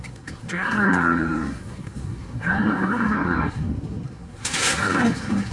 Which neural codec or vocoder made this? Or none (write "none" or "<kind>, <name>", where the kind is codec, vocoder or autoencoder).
codec, SNAC